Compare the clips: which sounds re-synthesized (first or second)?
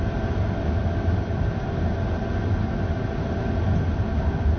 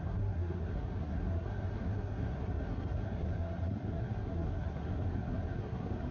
second